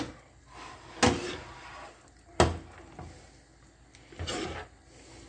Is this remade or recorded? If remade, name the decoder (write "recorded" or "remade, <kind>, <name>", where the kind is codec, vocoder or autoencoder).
recorded